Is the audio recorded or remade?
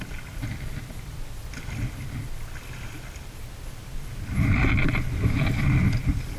recorded